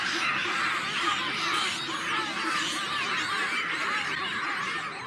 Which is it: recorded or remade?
recorded